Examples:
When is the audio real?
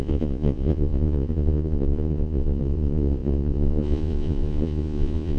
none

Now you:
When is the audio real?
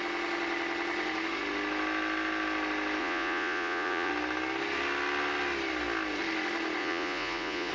0.0-3.0; 4.1-6.8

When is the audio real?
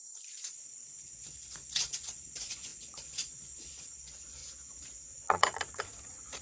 none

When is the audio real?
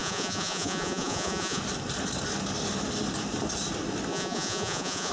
1.6-4.1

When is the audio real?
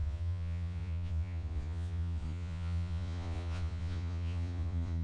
none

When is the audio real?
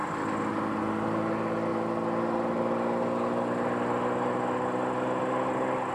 0.0-5.9